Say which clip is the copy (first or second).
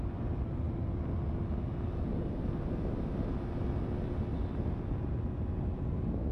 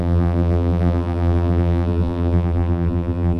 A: second